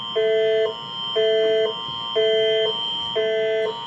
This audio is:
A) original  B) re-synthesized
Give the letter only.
A